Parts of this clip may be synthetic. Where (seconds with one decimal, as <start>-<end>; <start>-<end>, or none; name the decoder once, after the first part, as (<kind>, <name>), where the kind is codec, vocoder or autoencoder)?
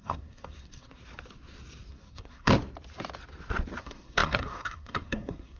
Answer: 0.0-1.0 (codec, SNAC); 1.9-2.5; 3.8-5.6